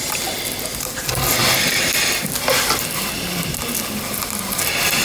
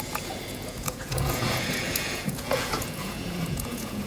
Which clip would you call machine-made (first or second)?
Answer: second